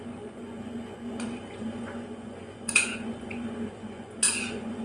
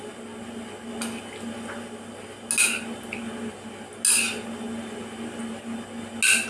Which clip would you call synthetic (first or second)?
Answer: first